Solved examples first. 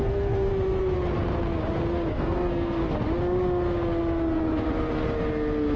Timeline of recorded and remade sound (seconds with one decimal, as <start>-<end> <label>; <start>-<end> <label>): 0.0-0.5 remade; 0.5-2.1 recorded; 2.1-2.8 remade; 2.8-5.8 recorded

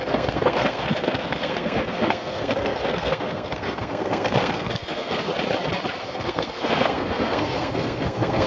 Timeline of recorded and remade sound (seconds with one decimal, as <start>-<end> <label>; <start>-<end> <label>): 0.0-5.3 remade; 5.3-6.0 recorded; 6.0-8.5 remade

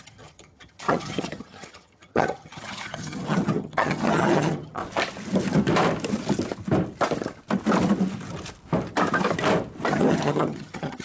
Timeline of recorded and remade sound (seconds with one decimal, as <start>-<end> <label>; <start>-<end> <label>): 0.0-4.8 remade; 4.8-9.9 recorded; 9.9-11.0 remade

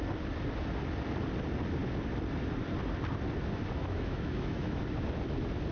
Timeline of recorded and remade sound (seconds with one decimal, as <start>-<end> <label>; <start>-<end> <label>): 0.0-3.8 recorded; 3.8-4.8 remade; 4.8-5.7 recorded